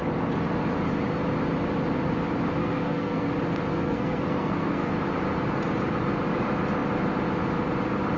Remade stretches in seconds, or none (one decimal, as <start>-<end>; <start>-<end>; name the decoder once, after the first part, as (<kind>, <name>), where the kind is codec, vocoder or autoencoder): 2.6-3.3 (codec, SNAC); 3.7-4.9